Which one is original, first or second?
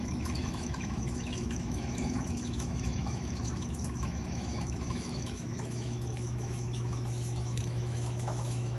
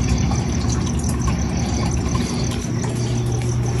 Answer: second